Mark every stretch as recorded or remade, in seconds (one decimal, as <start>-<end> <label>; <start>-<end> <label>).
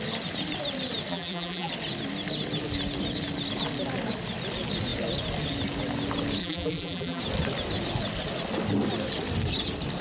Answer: 0.0-1.1 recorded; 1.1-1.7 remade; 1.7-6.4 recorded; 6.4-7.2 remade; 7.2-10.0 recorded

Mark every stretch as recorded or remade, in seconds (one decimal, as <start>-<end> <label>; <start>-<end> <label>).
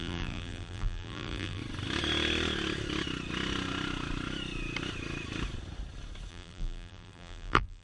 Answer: 0.0-1.6 remade; 1.6-6.3 recorded; 6.3-7.8 remade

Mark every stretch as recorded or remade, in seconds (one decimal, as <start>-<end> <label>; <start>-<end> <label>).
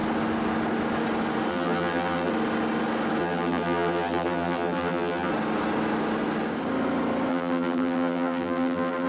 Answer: 0.0-1.5 recorded; 1.5-2.3 remade; 2.3-3.2 recorded; 3.2-5.3 remade; 5.3-7.3 recorded; 7.3-9.1 remade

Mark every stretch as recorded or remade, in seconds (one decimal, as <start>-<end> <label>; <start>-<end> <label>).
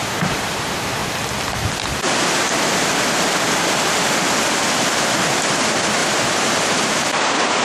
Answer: 0.0-1.0 remade; 1.0-5.6 recorded; 5.6-7.6 remade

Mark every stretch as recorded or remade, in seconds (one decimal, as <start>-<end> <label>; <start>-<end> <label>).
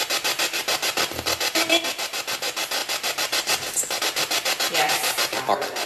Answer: 0.0-2.8 recorded; 2.8-4.0 remade; 4.0-5.9 recorded